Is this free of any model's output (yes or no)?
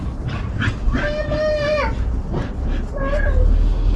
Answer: yes